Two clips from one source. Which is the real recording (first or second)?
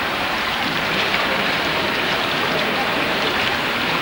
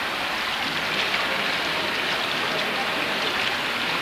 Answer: second